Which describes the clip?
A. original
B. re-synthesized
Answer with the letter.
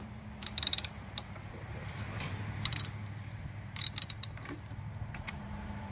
B